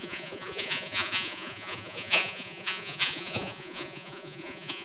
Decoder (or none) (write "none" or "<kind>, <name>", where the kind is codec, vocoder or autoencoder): vocoder, Vocos